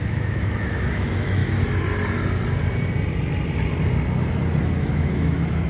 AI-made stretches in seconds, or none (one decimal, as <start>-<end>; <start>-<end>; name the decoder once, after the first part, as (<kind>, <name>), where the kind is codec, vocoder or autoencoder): 0.0-1.4 (autoencoder, DAC-VAE); 4.8-5.7

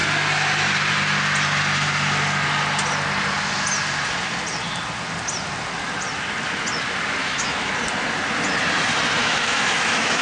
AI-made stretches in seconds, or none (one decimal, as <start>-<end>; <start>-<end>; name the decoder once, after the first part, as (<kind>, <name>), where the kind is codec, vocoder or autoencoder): 7.2-7.7 (autoencoder, DAC-VAE); 9.2-10.2